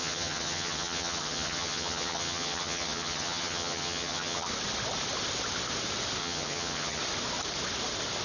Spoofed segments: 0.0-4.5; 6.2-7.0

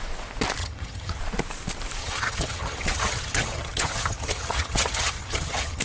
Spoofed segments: 0.6-1.2; 2.0-5.8